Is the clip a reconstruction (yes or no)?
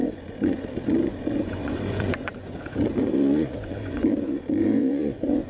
yes